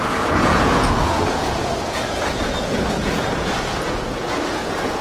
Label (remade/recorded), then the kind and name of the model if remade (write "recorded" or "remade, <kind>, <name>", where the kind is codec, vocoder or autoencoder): remade, vocoder, Vocos